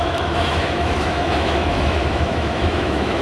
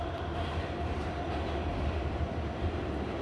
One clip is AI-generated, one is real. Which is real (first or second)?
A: second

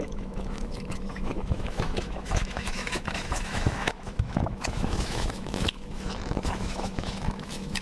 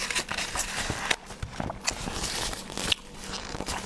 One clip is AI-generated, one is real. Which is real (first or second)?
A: second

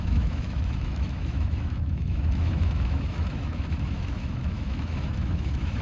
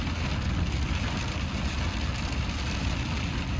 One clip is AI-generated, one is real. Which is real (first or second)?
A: second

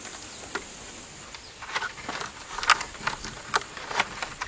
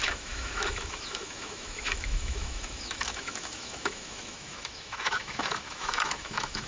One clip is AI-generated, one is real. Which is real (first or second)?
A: first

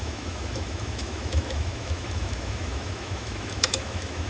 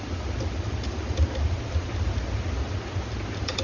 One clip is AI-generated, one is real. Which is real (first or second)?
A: second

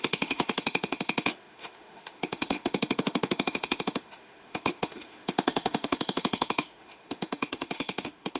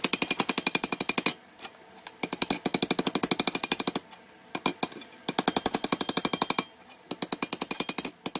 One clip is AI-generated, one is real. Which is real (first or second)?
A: second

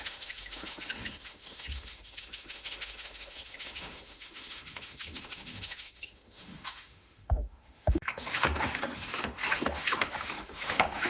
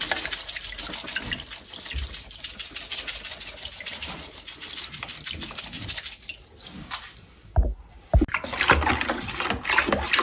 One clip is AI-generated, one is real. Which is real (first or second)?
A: second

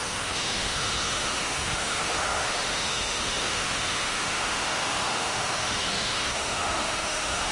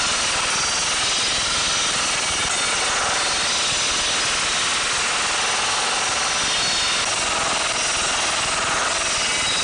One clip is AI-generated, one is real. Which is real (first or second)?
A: second